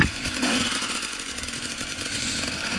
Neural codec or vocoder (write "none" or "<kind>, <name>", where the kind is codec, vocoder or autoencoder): vocoder, Vocos